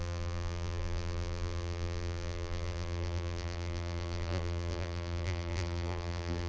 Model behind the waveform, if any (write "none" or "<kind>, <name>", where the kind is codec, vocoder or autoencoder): vocoder, BigVGAN v2